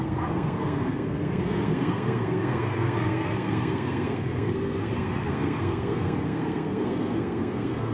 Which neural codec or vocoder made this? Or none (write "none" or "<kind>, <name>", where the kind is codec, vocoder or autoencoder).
codec, SNAC